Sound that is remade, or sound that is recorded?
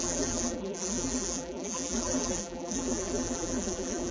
remade